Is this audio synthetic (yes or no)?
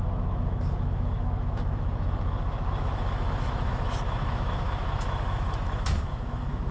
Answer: yes